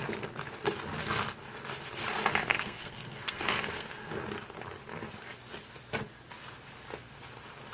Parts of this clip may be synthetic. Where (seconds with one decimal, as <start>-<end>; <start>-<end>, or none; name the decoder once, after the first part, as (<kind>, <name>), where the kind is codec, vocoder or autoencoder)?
2.4-4.1 (codec, SNAC)